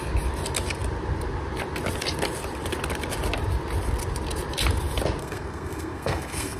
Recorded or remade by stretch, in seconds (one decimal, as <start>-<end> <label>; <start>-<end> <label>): 0.0-5.2 recorded; 5.2-6.6 remade